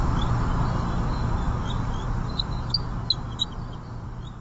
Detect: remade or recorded recorded